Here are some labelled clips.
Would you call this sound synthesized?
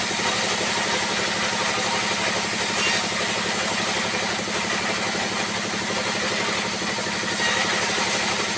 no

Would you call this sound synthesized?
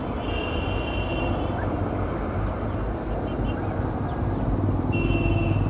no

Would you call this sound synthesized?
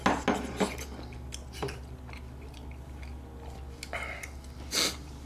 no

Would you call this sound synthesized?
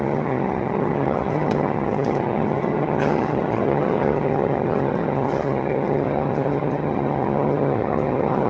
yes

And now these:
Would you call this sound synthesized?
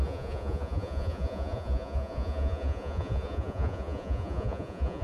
yes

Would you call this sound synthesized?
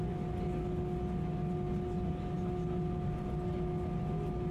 no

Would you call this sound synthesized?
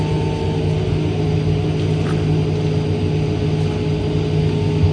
no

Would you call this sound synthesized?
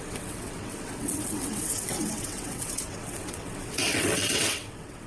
yes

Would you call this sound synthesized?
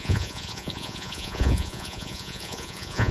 yes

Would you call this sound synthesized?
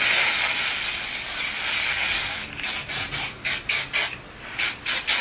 no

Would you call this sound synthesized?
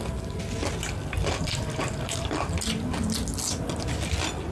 no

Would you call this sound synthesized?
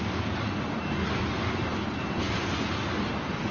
no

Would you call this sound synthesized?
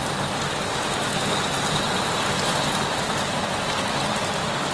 no